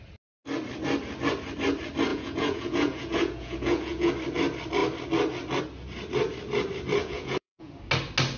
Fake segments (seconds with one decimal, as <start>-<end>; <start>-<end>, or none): 2.1-4.1; 7.0-7.7